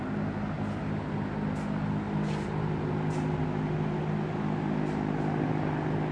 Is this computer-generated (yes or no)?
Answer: no